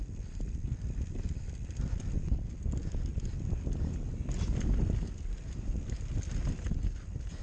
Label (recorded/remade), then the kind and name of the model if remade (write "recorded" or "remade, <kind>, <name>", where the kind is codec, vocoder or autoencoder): recorded